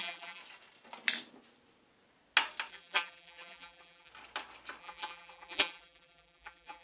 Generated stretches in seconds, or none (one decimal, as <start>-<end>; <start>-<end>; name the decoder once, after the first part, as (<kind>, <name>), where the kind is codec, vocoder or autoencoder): 0.0-0.4 (vocoder, BigVGAN v2); 2.7-4.1; 4.8-6.8